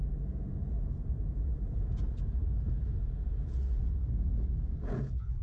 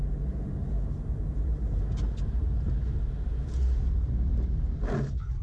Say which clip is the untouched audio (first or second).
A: second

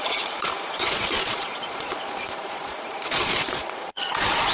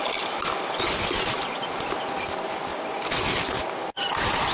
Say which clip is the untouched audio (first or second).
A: second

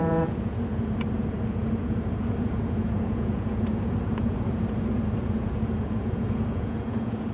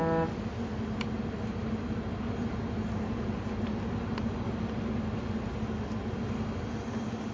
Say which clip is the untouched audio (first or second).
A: second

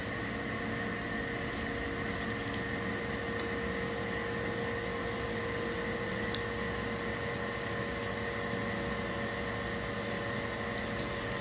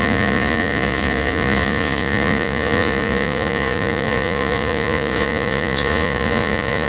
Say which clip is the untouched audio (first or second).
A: first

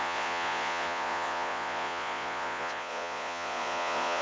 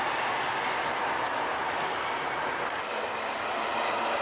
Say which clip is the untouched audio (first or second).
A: second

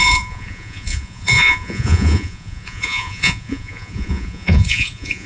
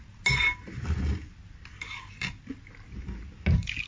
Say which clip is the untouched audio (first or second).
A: second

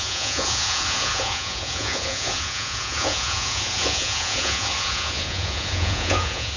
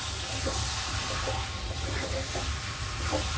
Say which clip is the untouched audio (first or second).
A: second